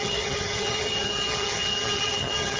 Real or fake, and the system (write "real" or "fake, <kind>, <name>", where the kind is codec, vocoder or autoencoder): fake, vocoder, HiFi-GAN